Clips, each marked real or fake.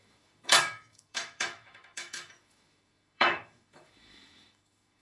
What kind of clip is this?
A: fake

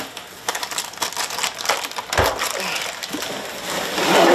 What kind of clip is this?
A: real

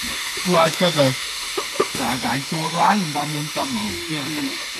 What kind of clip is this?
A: fake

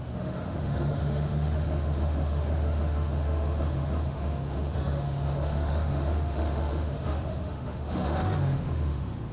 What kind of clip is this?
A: fake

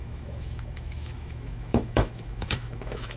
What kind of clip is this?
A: fake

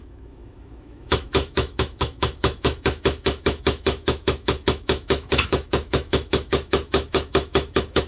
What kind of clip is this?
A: fake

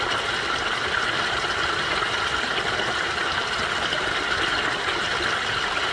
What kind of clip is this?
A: real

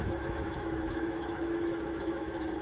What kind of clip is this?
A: fake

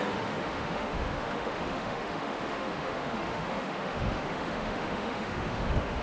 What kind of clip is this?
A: fake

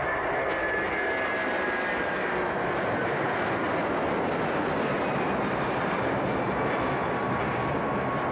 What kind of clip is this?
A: real